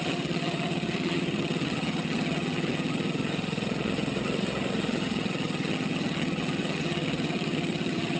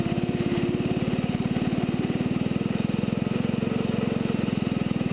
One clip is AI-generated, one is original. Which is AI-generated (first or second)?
first